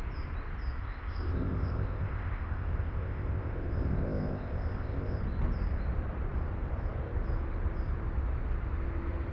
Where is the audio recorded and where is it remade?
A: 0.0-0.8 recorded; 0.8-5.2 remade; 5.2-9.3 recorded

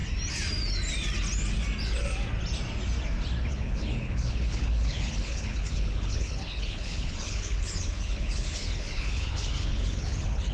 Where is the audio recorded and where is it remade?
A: 0.0-3.5 recorded; 3.5-10.5 remade

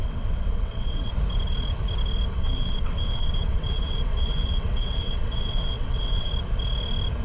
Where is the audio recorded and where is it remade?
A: 0.0-1.1 remade; 1.1-2.3 recorded; 2.3-6.3 remade; 6.3-7.2 recorded

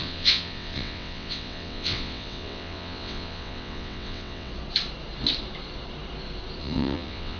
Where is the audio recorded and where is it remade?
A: 0.0-4.5 remade; 4.5-6.6 recorded; 6.6-7.4 remade

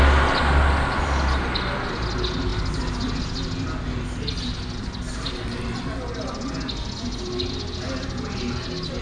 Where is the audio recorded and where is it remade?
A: 0.0-2.5 recorded; 2.5-3.2 remade; 3.2-9.0 recorded

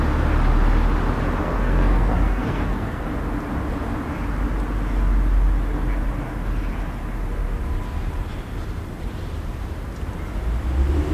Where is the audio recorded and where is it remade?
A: 0.0-1.4 recorded; 1.4-3.1 remade; 3.1-11.1 recorded